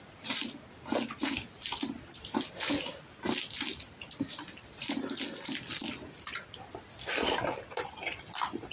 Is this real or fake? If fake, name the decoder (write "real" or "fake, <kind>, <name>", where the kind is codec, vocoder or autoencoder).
real